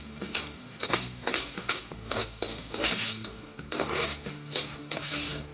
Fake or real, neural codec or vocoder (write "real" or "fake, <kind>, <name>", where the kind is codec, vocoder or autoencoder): fake, codec, DAC